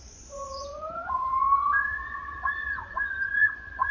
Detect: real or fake fake